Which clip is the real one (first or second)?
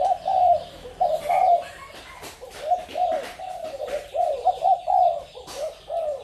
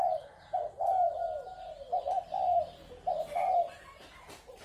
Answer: second